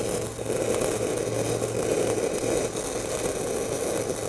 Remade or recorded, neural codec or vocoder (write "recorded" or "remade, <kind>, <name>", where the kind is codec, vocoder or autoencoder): recorded